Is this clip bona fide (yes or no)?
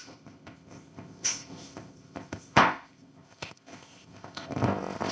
no